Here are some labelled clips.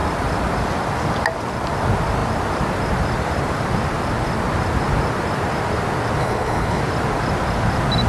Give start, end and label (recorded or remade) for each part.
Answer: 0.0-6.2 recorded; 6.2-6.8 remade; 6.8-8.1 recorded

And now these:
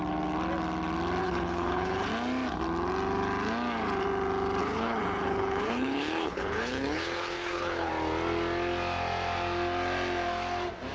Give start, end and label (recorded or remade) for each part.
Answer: 0.0-1.2 recorded; 1.2-2.1 remade; 2.1-4.6 recorded; 4.6-7.9 remade; 7.9-10.9 recorded

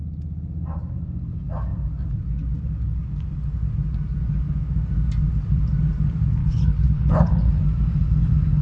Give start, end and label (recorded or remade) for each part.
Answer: 0.0-6.4 recorded; 6.4-7.6 remade; 7.6-8.6 recorded

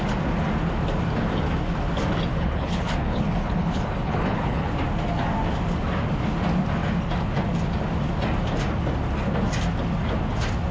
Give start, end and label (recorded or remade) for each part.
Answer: 0.0-2.3 recorded; 2.3-4.7 remade; 4.7-10.7 recorded

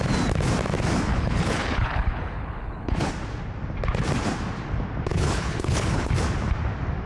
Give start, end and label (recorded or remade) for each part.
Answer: 0.0-1.1 recorded; 1.1-3.1 remade; 3.1-5.1 recorded; 5.1-6.1 remade; 6.1-7.1 recorded